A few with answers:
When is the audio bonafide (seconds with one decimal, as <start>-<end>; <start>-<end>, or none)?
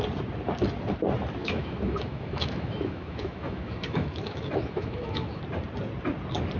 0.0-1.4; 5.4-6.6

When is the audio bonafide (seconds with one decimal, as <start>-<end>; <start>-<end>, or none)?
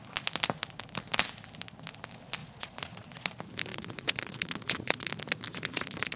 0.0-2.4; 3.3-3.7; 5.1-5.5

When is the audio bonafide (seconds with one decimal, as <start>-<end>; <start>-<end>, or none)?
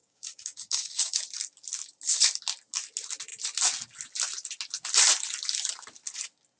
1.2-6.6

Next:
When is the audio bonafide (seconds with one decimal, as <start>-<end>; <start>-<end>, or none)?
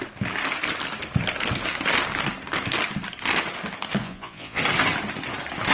0.0-4.0; 4.6-5.7